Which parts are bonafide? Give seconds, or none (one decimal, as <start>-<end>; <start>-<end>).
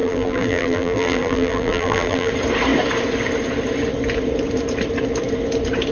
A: 2.3-5.9